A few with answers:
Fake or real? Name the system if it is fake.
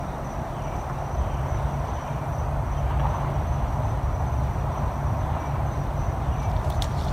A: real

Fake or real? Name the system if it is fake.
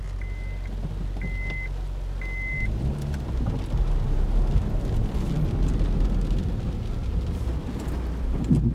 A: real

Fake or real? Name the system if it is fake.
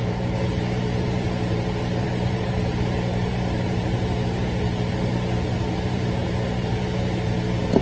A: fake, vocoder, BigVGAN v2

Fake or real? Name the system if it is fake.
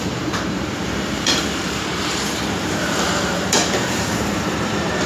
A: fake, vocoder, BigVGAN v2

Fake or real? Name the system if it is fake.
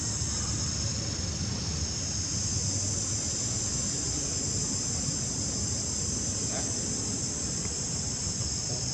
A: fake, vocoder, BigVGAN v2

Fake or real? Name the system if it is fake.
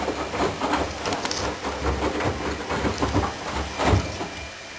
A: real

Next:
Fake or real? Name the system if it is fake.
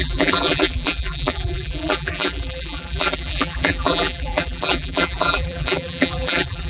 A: fake, vocoder, BigVGAN v2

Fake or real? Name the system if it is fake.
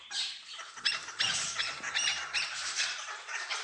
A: fake, vocoder, BigVGAN v2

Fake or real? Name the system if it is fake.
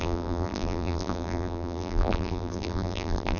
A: fake, vocoder, BigVGAN v2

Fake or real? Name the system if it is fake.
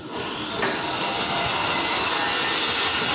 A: real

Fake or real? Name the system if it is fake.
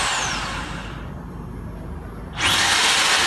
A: real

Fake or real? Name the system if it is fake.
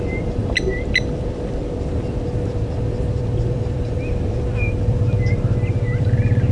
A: fake, vocoder, BigVGAN v2